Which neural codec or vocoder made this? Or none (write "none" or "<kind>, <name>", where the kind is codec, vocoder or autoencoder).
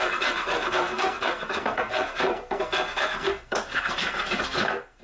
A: codec, SNAC